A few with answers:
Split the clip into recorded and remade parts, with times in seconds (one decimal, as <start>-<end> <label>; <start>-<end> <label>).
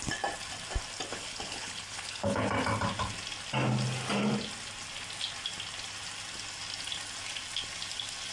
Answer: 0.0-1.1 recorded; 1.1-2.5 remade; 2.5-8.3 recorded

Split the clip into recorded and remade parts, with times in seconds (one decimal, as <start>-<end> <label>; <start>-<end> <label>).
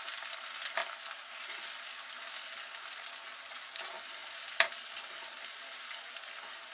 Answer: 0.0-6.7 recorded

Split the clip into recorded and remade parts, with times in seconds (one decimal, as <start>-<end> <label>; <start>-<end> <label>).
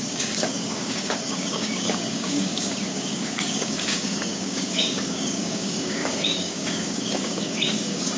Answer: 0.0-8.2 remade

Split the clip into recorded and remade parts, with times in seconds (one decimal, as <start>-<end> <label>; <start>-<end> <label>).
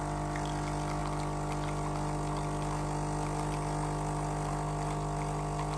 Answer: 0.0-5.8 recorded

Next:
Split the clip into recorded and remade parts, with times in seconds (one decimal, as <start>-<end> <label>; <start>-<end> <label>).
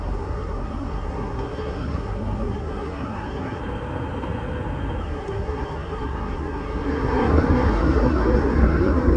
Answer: 0.0-3.6 remade; 3.6-5.0 recorded; 5.0-9.2 remade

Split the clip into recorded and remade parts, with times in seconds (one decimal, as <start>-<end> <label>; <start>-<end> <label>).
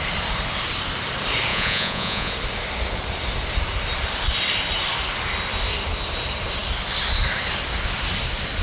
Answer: 0.0-1.5 recorded; 1.5-2.3 remade; 2.3-8.6 recorded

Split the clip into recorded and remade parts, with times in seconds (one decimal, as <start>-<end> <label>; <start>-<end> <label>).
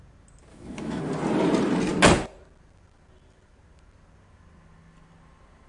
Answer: 0.0-0.5 recorded; 0.5-1.0 remade; 1.0-5.7 recorded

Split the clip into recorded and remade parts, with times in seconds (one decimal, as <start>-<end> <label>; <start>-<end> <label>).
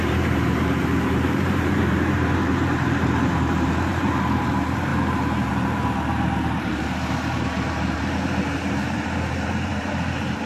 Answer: 0.0-10.5 remade